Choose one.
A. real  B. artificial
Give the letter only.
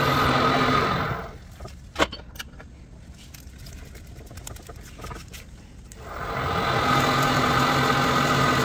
A